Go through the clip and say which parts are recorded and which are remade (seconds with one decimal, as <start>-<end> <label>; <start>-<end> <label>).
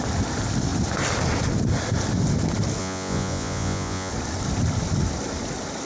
0.0-2.8 recorded; 2.8-4.1 remade; 4.1-5.9 recorded